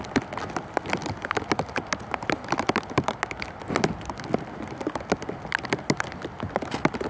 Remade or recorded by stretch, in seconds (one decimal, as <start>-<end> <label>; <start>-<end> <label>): 0.0-7.1 recorded